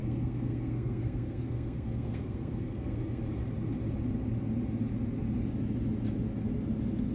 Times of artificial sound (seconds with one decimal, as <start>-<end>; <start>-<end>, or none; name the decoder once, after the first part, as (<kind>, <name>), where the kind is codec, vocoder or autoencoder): 0.0-3.2 (codec, SNAC)